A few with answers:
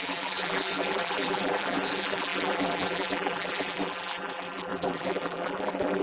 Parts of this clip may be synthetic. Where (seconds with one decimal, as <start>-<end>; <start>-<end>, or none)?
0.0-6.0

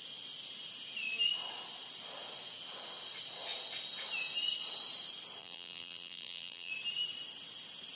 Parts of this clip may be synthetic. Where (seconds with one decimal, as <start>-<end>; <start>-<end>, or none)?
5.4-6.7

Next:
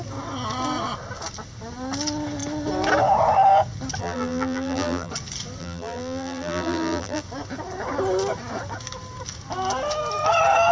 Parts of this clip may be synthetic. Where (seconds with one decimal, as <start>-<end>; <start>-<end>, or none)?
4.0-5.1; 5.6-7.2